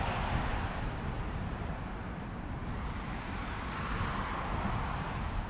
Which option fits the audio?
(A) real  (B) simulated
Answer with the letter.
A